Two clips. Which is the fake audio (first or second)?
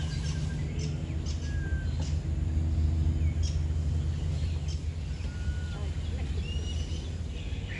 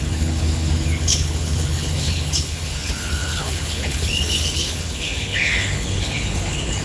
second